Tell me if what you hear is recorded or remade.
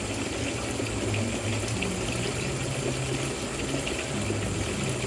recorded